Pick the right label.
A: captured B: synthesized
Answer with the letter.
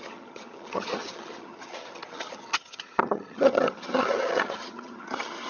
B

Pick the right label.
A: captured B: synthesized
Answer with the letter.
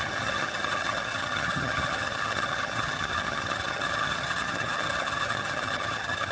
B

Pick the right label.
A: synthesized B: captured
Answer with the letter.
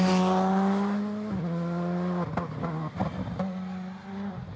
B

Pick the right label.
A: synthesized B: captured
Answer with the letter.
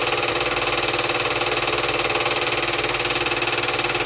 B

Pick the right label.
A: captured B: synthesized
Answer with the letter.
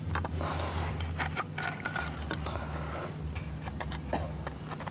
A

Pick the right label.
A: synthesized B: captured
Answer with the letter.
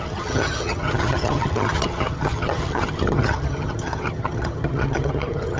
A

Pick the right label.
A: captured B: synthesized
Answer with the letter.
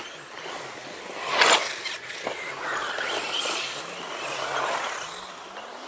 A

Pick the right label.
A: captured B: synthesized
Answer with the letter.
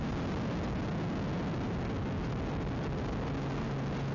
A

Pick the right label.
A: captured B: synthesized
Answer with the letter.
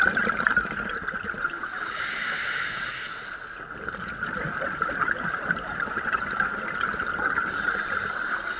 A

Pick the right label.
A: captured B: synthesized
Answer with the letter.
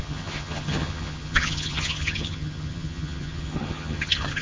B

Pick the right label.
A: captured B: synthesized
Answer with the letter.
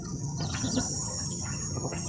B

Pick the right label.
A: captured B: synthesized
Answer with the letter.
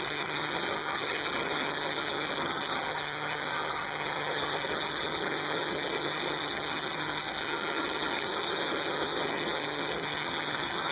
B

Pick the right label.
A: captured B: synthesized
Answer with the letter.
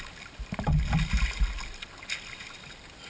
A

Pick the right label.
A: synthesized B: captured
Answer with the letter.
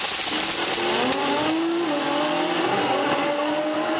B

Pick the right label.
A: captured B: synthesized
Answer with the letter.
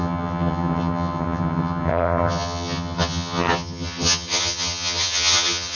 B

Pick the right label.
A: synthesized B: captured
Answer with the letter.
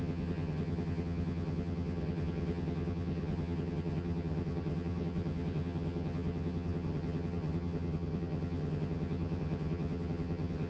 A